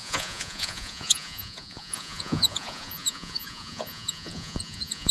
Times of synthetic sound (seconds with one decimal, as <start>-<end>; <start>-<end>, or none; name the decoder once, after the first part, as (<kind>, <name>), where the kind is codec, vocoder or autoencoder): 0.0-5.1 (vocoder, Vocos)